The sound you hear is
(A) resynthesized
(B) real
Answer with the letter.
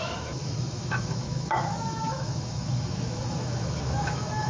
A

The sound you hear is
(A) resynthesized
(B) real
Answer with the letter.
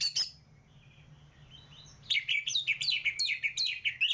B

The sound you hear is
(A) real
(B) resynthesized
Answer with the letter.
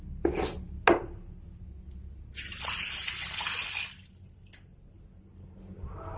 A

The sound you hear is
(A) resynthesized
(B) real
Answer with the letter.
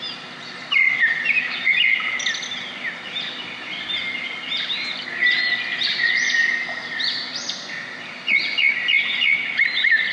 B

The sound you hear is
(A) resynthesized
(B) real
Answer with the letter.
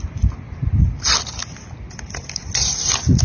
B